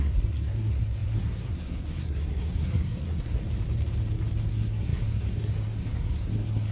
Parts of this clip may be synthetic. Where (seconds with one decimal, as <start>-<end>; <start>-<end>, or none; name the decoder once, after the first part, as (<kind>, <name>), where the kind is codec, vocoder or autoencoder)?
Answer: 0.0-3.4 (codec, SNAC); 4.5-6.7